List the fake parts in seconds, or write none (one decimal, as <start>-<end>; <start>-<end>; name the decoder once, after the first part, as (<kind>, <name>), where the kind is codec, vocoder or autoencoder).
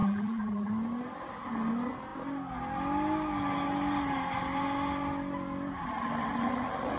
0.0-0.7 (vocoder, BigVGAN v2)